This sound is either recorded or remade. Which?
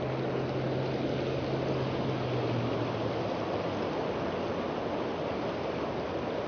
recorded